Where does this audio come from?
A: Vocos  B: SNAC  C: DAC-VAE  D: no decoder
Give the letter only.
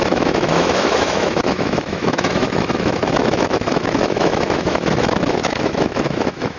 C